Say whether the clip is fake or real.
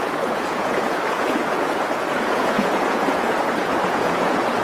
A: fake